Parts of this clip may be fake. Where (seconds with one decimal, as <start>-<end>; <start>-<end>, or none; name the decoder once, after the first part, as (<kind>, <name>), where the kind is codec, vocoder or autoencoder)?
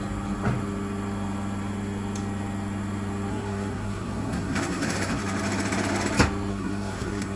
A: 3.3-5.2 (codec, SNAC); 6.5-7.4